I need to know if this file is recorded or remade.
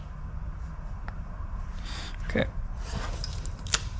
recorded